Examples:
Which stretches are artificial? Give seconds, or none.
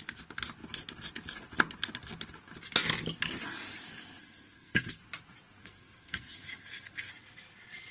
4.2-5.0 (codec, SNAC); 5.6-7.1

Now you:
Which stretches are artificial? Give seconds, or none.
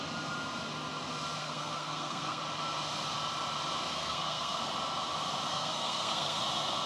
1.4-2.4 (codec, SNAC); 3.9-4.6; 5.5-6.4